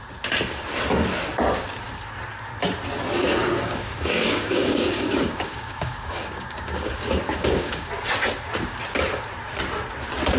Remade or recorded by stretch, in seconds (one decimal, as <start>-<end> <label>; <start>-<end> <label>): 0.0-3.6 recorded; 3.6-7.9 remade; 7.9-10.4 recorded